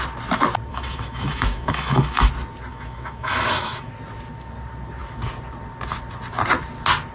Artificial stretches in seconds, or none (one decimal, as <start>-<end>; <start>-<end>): 0.7-2.3; 2.7-3.9